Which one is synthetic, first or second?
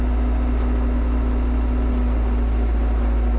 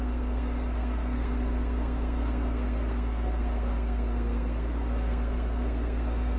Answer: second